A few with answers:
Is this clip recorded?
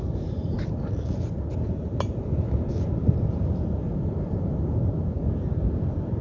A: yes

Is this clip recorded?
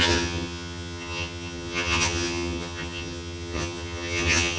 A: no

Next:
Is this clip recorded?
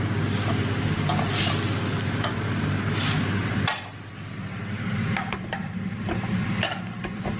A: yes